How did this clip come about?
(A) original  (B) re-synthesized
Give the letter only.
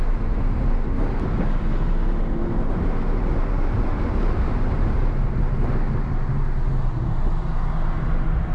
A